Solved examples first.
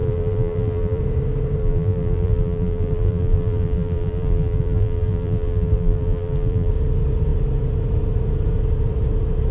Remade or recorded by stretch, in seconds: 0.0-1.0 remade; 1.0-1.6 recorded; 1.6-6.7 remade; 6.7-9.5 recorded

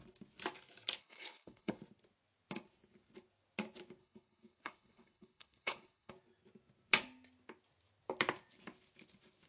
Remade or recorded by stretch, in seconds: 0.0-1.0 recorded; 1.0-1.7 remade; 1.7-4.0 recorded; 4.0-6.1 remade; 6.1-9.5 recorded

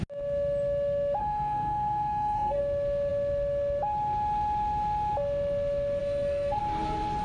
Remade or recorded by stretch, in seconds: 0.0-1.2 recorded; 1.2-2.6 remade; 2.6-6.0 recorded; 6.0-6.6 remade; 6.6-7.2 recorded